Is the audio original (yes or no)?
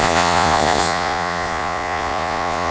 no